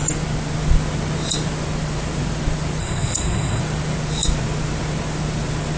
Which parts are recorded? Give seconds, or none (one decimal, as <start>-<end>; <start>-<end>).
0.0-2.8; 3.6-5.8

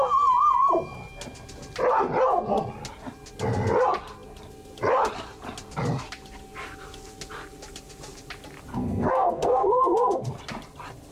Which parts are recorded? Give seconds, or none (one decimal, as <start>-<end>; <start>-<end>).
0.0-8.7; 10.4-11.1

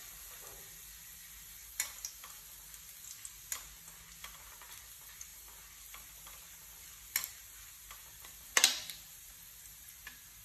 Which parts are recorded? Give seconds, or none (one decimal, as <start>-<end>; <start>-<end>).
0.0-10.4

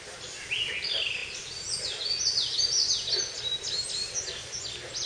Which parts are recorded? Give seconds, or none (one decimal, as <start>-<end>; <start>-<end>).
0.0-5.1

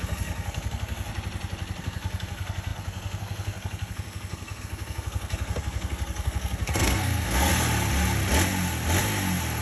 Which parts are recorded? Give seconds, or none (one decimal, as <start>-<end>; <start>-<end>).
1.1-1.8; 7.5-9.6

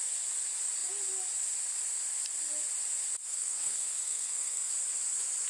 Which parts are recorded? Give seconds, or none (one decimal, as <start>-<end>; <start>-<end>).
0.0-3.3; 4.7-5.5

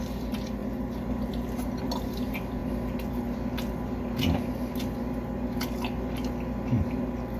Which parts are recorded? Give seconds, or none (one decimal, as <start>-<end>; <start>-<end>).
0.0-7.4

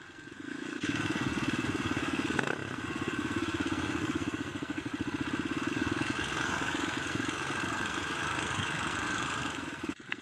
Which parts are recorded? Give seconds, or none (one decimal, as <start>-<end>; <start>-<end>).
4.9-5.7